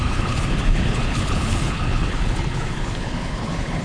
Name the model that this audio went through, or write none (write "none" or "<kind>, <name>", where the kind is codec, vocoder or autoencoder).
codec, HILCodec